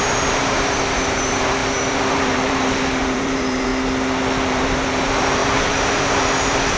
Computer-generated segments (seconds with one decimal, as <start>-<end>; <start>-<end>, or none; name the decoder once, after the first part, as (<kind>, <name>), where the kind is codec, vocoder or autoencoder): 0.0-3.7 (vocoder, BigVGAN v2); 4.5-6.8